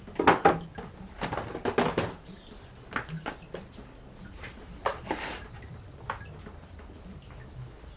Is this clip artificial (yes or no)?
no